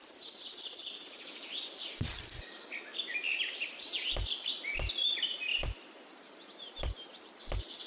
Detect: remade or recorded remade